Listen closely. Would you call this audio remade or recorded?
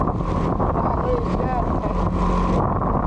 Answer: recorded